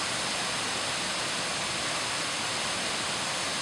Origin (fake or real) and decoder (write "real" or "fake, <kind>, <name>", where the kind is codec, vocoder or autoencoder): real